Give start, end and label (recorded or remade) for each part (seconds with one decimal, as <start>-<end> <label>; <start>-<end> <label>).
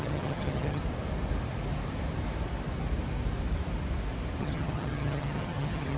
0.0-0.8 remade; 0.8-4.4 recorded; 4.4-6.0 remade